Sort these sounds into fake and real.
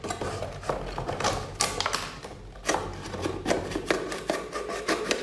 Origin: real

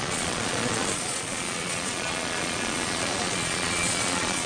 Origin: fake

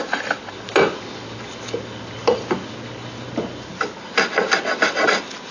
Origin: real